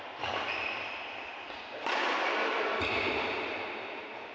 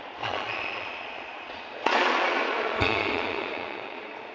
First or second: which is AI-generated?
second